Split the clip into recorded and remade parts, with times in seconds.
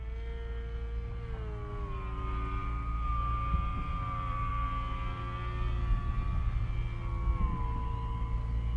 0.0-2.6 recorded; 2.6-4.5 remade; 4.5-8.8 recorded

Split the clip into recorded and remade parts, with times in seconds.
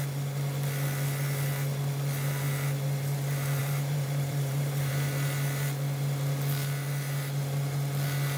0.0-3.6 recorded; 3.6-4.9 remade; 4.9-8.4 recorded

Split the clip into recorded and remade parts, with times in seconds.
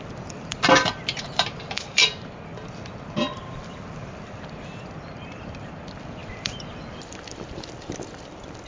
0.0-8.7 remade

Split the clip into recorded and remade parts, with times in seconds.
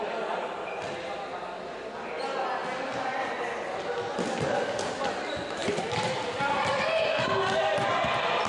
0.0-8.5 recorded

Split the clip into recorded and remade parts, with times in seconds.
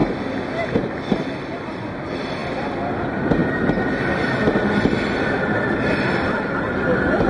0.0-0.7 recorded; 0.7-7.3 remade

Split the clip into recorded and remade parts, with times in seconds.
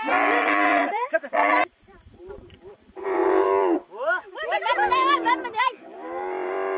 0.0-6.8 remade